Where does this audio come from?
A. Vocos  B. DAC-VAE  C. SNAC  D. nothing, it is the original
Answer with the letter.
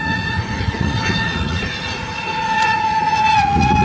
A